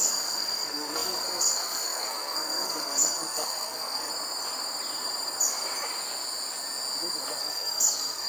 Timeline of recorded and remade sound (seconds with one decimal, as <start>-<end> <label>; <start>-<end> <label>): 0.0-4.1 remade; 4.1-7.4 recorded; 7.4-8.3 remade